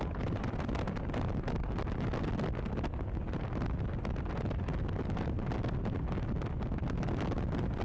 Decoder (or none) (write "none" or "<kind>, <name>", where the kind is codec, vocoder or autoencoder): none